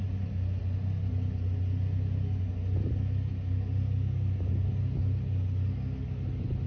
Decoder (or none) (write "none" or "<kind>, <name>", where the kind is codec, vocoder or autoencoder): none